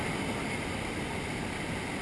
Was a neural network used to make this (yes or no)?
no